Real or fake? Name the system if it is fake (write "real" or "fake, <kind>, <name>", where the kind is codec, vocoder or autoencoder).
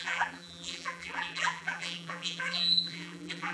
fake, vocoder, BigVGAN v2